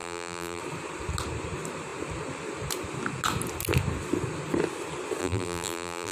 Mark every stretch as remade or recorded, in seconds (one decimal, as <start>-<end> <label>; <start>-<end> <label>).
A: 0.0-0.6 remade; 0.6-5.2 recorded; 5.2-6.1 remade